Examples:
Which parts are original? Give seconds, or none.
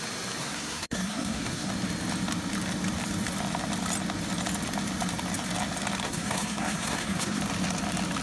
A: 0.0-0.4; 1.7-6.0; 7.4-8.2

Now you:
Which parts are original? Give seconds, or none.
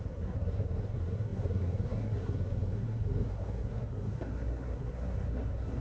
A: none